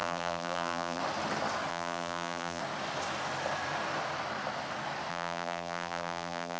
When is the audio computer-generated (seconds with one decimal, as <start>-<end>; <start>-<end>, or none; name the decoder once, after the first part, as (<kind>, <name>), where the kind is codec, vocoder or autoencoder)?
0.0-1.0 (vocoder, BigVGAN v2); 1.7-2.6; 5.1-6.6